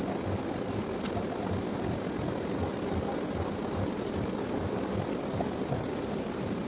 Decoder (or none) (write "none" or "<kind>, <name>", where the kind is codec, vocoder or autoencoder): none